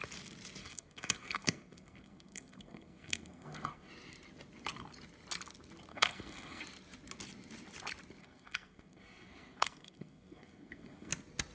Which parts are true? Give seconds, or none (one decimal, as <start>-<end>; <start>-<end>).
0.0-0.6; 3.9-5.9; 6.6-8.2; 11.1-11.5